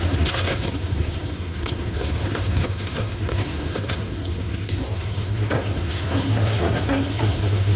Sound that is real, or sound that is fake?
fake